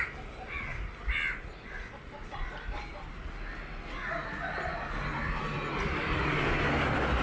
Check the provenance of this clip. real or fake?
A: real